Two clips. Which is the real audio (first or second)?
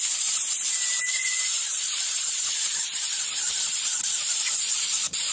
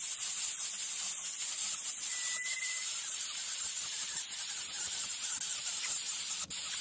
second